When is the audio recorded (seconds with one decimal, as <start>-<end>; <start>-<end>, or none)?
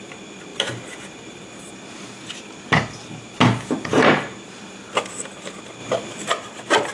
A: 0.0-0.5; 1.5-3.9; 4.5-6.9